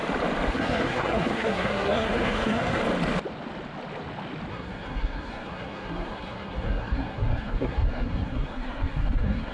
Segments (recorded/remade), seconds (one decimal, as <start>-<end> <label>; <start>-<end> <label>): 0.0-0.5 recorded; 0.5-2.8 remade; 2.8-4.5 recorded; 4.5-9.5 remade